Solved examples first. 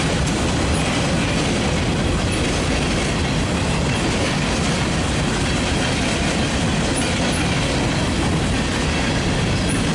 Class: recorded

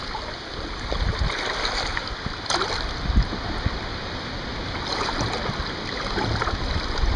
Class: recorded